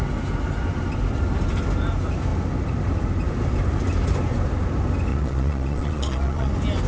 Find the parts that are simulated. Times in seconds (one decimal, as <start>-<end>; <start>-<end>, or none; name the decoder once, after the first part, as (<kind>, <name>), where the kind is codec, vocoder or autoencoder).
5.1-6.5 (vocoder, Vocos)